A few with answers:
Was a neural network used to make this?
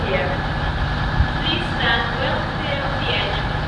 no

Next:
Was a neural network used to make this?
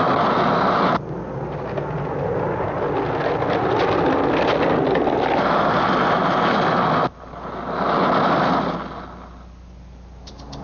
no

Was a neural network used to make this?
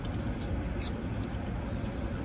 no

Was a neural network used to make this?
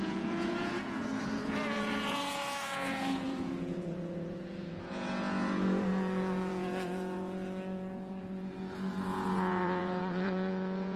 yes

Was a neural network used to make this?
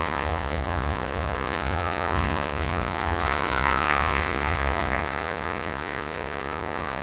yes